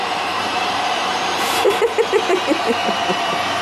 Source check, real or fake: fake